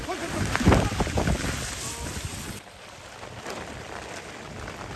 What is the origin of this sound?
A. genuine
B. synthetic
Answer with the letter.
A